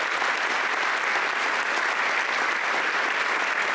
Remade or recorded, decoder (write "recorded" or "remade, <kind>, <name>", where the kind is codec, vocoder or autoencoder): recorded